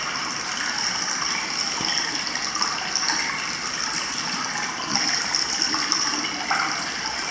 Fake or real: real